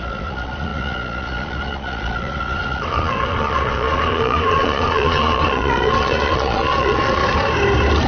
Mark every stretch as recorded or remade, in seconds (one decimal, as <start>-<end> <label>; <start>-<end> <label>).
0.0-7.2 remade; 7.2-8.1 recorded